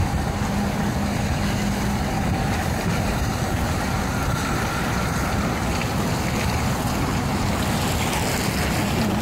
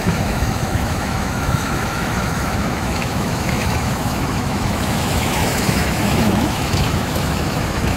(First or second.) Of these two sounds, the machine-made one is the second